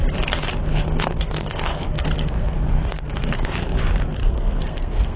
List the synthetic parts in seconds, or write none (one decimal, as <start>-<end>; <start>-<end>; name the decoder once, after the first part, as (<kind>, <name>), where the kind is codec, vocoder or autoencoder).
0.7-3.8 (codec, SNAC); 4.2-5.2